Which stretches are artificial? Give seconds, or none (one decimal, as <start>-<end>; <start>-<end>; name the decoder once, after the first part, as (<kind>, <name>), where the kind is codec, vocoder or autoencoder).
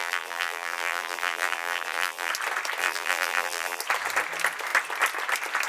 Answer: 0.0-2.3 (vocoder, BigVGAN v2); 2.8-3.8